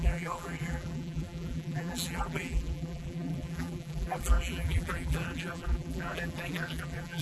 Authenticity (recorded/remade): remade